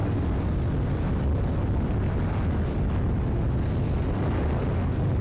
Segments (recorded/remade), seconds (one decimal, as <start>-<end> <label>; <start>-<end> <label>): 0.0-5.2 recorded